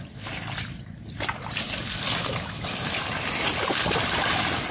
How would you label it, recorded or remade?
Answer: recorded